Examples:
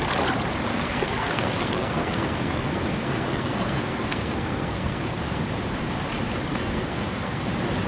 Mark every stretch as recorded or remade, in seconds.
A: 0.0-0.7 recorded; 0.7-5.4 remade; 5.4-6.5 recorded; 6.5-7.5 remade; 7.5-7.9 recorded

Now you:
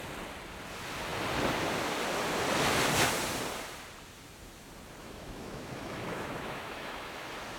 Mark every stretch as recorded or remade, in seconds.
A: 0.0-5.0 recorded; 5.0-7.6 remade

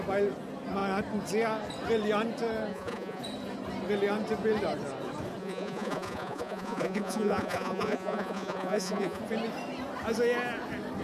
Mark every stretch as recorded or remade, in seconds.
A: 0.0-2.7 recorded; 2.7-3.2 remade; 3.2-5.4 recorded; 5.4-9.2 remade; 9.2-11.0 recorded

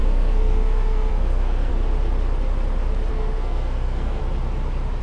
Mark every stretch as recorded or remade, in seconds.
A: 0.0-1.7 remade; 1.7-3.1 recorded; 3.1-4.2 remade; 4.2-5.0 recorded

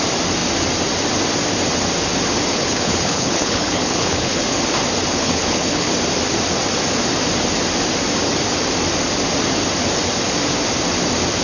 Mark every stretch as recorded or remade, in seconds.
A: 0.0-2.5 recorded; 2.5-4.4 remade; 4.4-5.2 recorded; 5.2-5.9 remade; 5.9-11.4 recorded

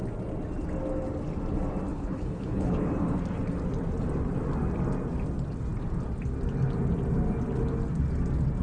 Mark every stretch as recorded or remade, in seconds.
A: 0.0-1.9 recorded; 1.9-2.9 remade; 2.9-8.6 recorded

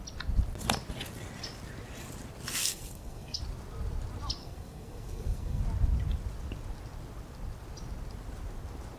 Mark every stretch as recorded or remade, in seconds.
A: 0.0-2.6 recorded; 2.6-3.4 remade; 3.4-4.4 recorded; 4.4-5.6 remade; 5.6-9.0 recorded